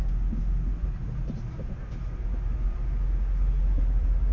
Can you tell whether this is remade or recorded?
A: recorded